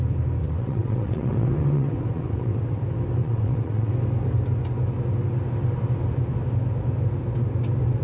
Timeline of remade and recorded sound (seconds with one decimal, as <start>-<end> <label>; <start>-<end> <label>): 0.0-0.4 recorded; 0.4-2.8 remade; 2.8-3.2 recorded; 3.2-3.9 remade; 3.9-8.0 recorded